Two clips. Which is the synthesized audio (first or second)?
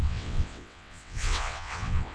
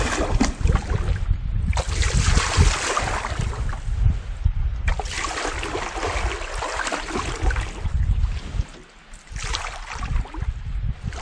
first